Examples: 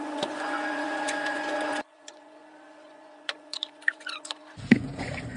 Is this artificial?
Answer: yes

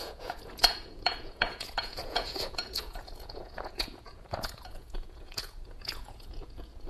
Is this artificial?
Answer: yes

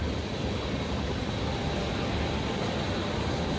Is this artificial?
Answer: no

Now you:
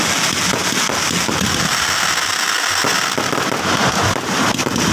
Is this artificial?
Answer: no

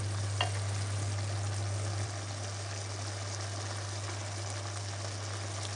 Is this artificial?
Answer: no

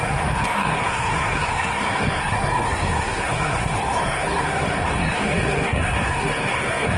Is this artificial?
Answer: yes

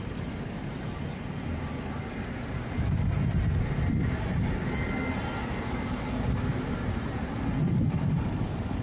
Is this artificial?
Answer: no